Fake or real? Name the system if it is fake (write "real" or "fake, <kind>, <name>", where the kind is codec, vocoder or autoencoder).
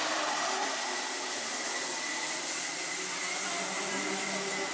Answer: real